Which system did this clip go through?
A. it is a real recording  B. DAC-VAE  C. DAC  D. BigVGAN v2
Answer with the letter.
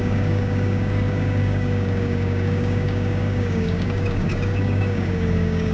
C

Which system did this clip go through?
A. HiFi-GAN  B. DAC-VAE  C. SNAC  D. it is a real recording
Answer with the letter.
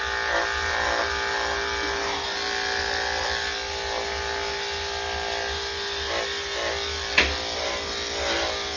D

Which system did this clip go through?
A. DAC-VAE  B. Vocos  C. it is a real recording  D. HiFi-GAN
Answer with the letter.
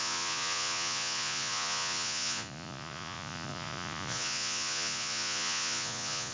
B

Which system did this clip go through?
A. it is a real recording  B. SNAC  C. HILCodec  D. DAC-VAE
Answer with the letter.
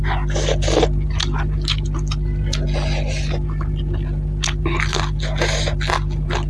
A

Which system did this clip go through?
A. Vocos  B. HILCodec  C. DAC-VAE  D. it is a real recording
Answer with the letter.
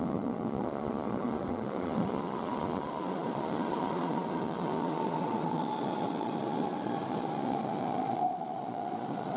A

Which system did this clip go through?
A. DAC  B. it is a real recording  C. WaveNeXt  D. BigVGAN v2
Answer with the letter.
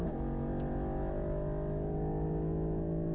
B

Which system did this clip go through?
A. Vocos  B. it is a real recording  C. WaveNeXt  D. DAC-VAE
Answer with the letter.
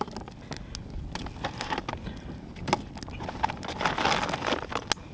B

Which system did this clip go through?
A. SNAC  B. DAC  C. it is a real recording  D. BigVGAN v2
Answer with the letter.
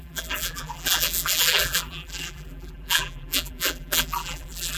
D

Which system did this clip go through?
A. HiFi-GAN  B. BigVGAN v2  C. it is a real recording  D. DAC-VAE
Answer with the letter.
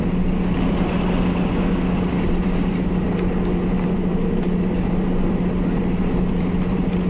C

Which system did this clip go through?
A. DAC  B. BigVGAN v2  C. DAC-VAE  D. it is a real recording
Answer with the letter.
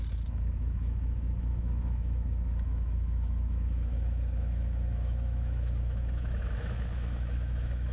C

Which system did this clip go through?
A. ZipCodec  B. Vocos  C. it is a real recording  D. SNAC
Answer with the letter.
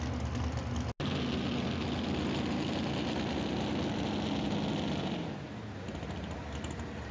C